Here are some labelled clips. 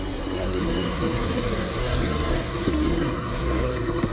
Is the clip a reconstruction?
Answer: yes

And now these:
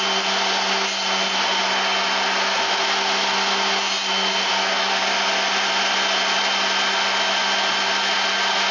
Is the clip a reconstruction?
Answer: no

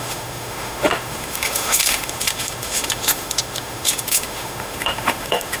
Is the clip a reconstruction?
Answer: yes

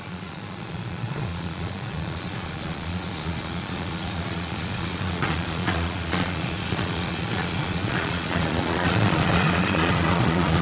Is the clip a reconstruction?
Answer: yes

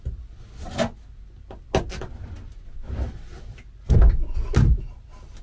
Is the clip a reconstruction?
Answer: no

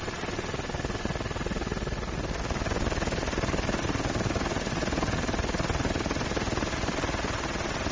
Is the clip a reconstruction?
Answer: no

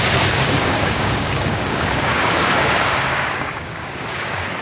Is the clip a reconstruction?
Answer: yes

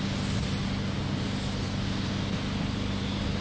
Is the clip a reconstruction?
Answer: no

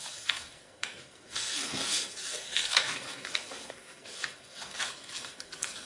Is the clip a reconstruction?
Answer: yes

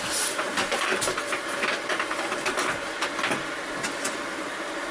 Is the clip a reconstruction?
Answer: no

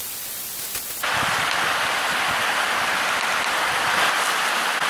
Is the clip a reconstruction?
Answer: no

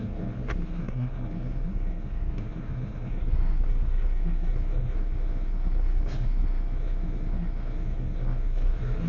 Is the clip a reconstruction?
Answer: yes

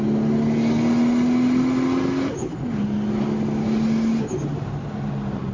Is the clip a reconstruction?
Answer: no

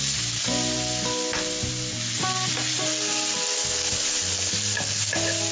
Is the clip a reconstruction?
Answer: no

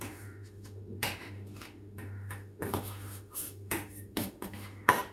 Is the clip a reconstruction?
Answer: yes